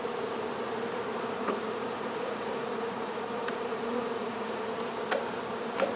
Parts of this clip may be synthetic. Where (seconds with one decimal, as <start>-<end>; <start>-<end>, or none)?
1.1-4.7

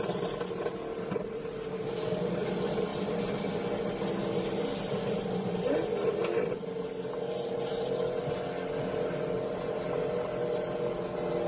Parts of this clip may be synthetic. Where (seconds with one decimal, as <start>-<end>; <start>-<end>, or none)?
none

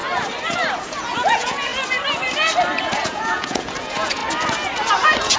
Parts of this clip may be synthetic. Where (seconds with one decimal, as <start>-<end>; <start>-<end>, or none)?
1.0-1.7; 2.9-4.2

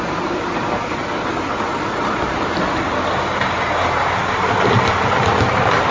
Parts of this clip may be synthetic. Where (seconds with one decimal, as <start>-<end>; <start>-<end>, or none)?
none

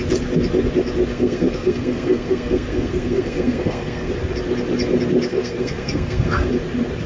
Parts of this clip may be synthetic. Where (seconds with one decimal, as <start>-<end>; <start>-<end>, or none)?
1.1-4.1; 5.3-6.5

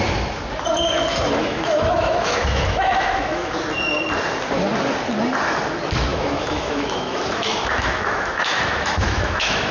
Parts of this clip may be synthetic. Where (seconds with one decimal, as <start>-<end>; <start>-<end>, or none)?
1.4-3.6; 6.1-9.7